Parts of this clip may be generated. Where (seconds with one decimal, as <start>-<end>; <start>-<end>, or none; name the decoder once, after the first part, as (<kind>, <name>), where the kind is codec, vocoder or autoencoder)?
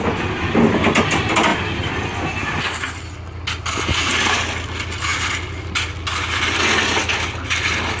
none